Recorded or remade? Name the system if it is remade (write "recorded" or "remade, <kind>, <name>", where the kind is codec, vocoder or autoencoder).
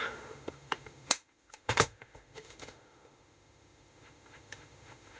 remade, autoencoder, DAC-VAE